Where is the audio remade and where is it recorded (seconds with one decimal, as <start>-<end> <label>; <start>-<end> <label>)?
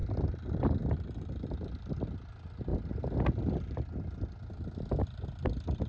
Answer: 0.0-5.9 recorded